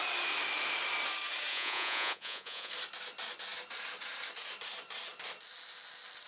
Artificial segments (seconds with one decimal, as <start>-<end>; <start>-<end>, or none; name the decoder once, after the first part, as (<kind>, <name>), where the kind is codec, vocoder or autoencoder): 1.5-2.7 (vocoder, Vocos)